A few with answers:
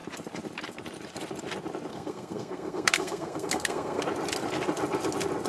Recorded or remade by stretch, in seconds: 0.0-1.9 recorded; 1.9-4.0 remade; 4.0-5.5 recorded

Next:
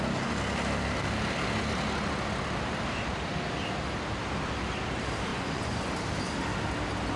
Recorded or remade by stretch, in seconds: 0.0-5.3 recorded; 5.3-5.9 remade; 5.9-7.2 recorded